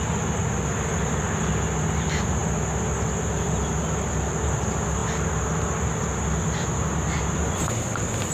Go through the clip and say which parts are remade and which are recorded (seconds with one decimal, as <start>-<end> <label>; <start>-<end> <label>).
0.0-8.3 recorded